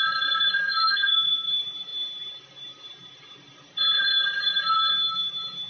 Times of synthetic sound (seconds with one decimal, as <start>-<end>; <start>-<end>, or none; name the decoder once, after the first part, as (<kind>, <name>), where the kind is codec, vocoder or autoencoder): 0.6-1.5 (codec, SNAC)